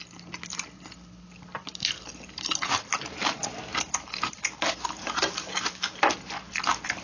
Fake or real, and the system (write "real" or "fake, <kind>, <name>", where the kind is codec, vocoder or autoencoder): real